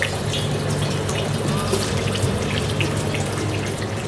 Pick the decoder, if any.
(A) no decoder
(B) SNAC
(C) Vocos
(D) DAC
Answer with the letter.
A